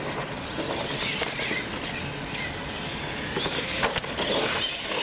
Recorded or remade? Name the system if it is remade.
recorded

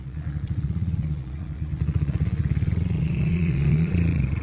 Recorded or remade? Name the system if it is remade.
remade, vocoder, Vocos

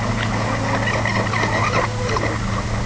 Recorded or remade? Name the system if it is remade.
recorded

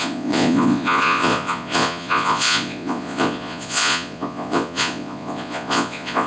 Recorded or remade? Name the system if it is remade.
remade, vocoder, Vocos